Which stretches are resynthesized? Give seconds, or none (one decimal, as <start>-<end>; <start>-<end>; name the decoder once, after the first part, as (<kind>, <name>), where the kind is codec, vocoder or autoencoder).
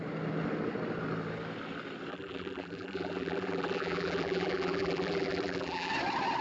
2.1-5.9 (vocoder, BigVGAN v2)